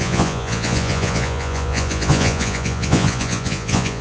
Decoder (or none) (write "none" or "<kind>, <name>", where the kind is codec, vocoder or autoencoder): vocoder, Vocos